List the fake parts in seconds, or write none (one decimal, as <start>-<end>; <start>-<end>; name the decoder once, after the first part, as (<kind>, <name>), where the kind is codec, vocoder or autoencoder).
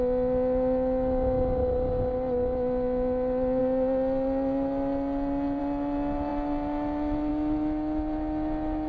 none